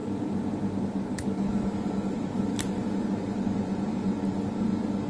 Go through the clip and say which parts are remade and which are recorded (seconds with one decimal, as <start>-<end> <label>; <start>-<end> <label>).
0.0-3.1 remade; 3.1-5.1 recorded